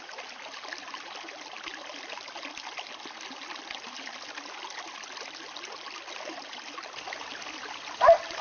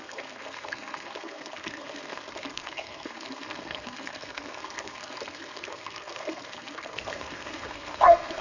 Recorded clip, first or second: first